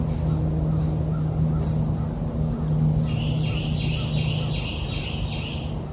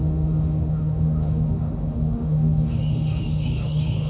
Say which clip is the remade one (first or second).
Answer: second